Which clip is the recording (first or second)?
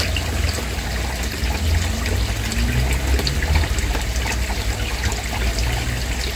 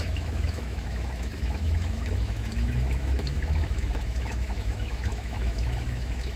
first